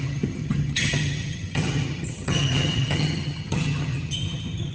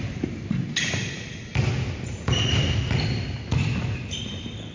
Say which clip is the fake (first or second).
first